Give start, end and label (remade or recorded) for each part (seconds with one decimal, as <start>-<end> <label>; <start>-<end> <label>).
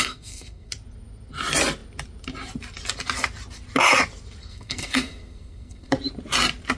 0.0-0.7 remade; 0.7-4.4 recorded; 4.4-5.9 remade; 5.9-6.8 recorded